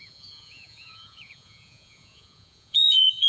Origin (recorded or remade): remade